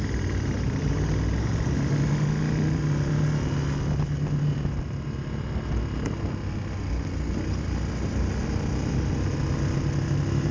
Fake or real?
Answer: real